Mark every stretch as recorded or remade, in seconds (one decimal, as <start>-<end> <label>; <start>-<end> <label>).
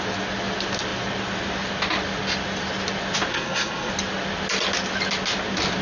0.0-3.3 recorded; 3.3-3.9 remade; 3.9-5.8 recorded